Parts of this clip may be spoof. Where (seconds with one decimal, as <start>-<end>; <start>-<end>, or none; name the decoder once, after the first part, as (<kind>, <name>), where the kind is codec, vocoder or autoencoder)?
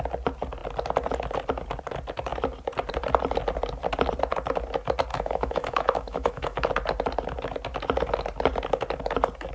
5.1-6.7 (autoencoder, DAC-VAE)